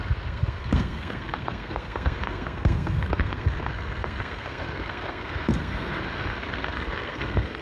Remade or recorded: remade